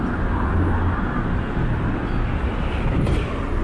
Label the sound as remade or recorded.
recorded